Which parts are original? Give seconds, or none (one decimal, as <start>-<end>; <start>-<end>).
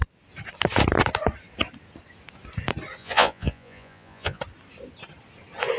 0.0-3.0; 4.4-5.8